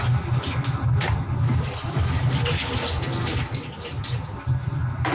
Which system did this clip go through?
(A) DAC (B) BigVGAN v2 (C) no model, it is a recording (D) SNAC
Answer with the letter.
C